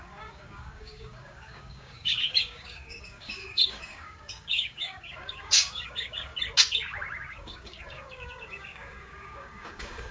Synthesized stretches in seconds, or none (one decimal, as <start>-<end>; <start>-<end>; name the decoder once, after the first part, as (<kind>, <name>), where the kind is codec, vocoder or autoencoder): 0.0-6.3 (codec, DAC); 7.3-10.1